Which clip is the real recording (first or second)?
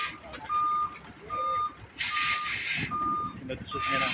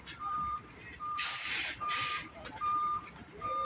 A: first